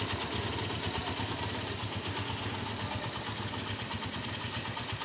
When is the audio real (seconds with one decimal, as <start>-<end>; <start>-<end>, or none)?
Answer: 0.0-5.0